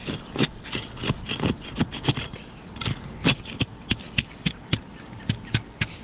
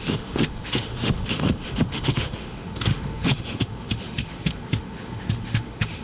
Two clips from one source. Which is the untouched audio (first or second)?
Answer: first